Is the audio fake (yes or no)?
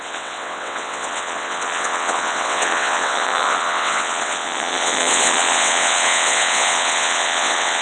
yes